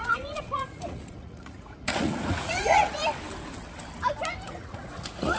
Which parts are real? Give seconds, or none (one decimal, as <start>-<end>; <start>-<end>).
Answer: 3.0-4.5

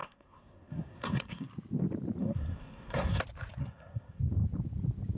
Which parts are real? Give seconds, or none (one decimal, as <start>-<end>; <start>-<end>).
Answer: 1.5-2.2; 3.2-3.6; 4.2-5.2

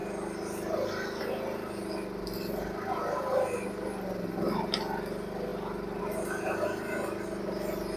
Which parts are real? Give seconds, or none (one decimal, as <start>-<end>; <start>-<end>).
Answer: 0.0-8.0

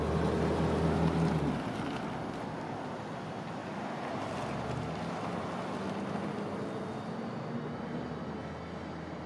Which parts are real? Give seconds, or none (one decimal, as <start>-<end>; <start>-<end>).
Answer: 0.0-9.3

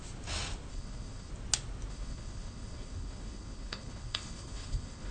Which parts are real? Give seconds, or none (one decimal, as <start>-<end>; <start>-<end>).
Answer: 0.0-0.7; 1.3-1.9